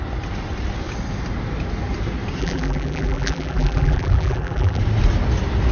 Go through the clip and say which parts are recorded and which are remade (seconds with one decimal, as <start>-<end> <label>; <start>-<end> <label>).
0.0-2.4 recorded; 2.4-4.8 remade; 4.8-5.7 recorded